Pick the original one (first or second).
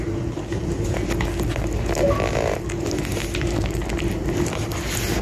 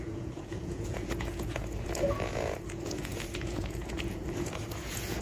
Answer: first